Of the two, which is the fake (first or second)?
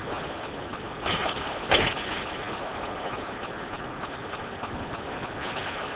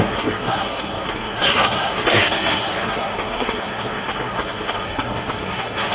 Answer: second